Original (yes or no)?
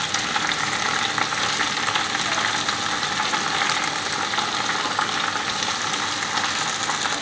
yes